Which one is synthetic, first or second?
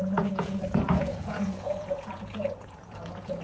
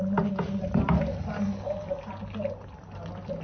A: first